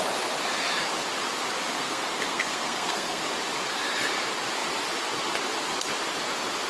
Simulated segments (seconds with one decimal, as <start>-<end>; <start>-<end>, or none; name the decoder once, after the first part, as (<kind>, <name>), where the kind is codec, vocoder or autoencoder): 1.7-3.2 (codec, SNAC)